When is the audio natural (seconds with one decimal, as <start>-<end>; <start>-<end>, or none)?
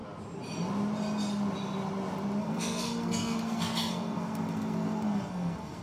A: 0.0-2.4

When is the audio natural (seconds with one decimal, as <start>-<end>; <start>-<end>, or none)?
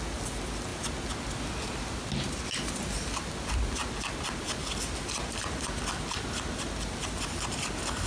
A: 0.0-8.1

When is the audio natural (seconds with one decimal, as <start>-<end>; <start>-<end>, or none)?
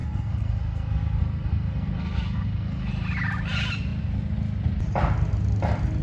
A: 2.9-6.0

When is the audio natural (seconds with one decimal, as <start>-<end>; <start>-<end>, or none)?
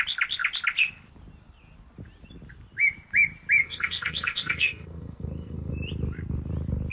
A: 0.0-3.6; 5.7-6.9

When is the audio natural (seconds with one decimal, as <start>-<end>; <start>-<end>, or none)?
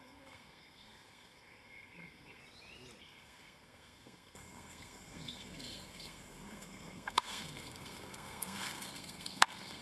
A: 2.4-3.0